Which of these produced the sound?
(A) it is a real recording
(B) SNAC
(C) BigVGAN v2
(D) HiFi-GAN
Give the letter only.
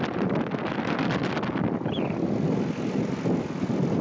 A